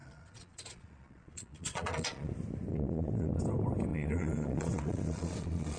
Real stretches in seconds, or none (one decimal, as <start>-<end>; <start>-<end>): 2.3-2.7; 3.4-3.9